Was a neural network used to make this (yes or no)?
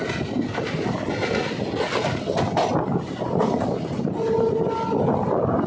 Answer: no